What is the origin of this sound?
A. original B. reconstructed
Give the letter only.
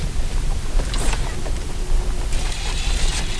A